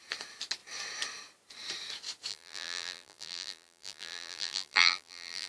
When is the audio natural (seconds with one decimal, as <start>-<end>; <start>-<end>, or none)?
0.0-2.3